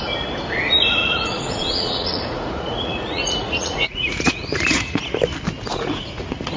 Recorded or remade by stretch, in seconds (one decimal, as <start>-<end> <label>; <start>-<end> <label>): 0.0-1.0 recorded; 1.0-5.0 remade; 5.0-5.7 recorded; 5.7-6.6 remade